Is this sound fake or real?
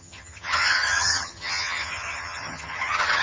fake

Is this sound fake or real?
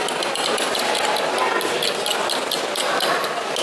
real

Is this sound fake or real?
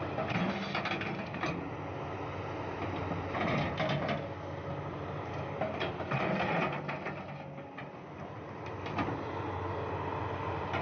real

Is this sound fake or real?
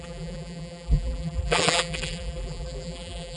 fake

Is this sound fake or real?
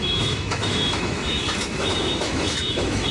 fake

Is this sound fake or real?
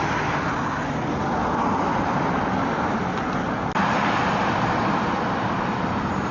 real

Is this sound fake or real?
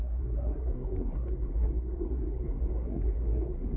fake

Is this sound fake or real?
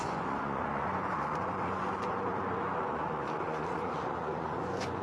fake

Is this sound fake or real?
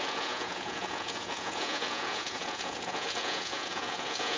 fake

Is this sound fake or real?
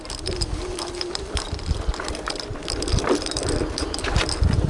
fake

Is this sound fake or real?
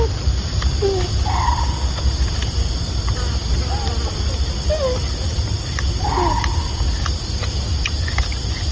real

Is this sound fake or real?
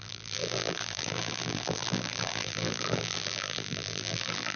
fake